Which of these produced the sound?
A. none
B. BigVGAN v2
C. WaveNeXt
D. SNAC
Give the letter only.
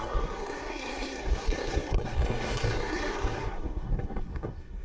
D